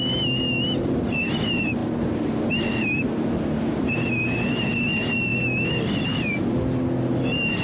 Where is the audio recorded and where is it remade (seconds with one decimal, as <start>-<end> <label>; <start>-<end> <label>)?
0.0-7.6 recorded